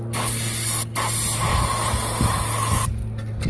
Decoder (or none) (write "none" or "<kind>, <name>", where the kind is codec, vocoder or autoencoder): none